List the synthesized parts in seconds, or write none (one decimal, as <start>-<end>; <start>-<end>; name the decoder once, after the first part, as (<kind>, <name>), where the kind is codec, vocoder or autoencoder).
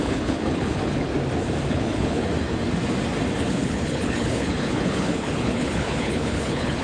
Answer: 0.0-1.1 (codec, HILCodec); 1.7-2.3; 3.4-6.8